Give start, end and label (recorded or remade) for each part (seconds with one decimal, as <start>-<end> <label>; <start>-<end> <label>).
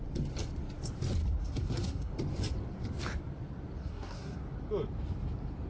0.0-1.4 recorded; 1.4-2.1 remade; 2.1-3.8 recorded; 3.8-4.4 remade; 4.4-5.7 recorded